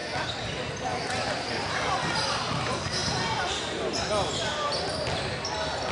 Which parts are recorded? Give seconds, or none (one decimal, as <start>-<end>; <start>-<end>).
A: 0.0-5.9